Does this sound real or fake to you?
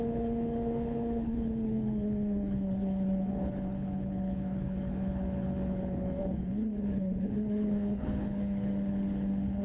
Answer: fake